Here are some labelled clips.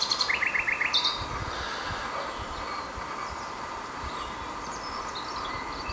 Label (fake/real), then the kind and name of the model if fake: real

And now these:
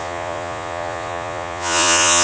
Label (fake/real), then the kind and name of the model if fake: fake, vocoder, Vocos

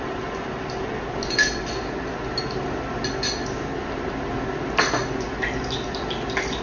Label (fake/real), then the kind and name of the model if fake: real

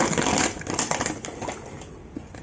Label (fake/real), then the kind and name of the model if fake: real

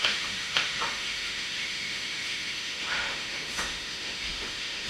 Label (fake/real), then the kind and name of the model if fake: fake, autoencoder, DAC-VAE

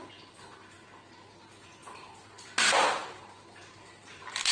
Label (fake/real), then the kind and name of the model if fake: real